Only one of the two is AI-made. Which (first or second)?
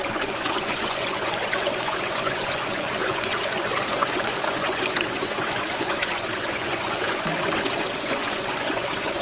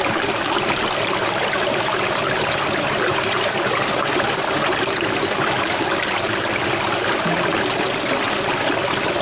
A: first